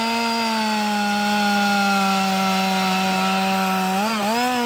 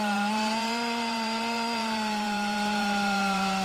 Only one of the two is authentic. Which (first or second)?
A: first